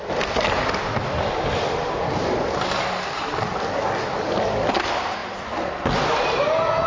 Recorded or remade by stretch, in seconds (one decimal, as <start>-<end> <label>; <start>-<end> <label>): 0.0-6.9 recorded